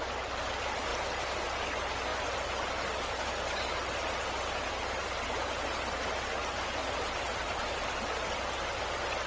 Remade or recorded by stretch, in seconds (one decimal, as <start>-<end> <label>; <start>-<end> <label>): 0.0-9.3 recorded